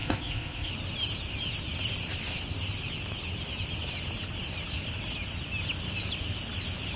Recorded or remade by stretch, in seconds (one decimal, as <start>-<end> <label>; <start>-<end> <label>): 0.0-0.7 remade; 0.7-7.0 recorded